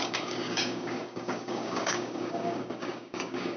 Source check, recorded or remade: remade